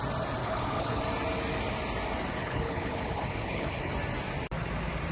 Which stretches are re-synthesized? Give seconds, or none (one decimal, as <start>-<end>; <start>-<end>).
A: 0.4-1.0; 2.4-3.9